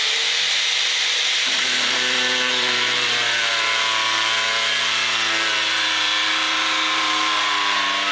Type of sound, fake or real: fake